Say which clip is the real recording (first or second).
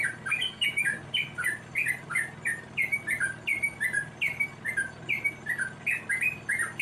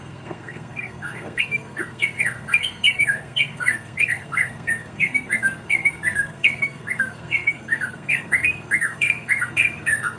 first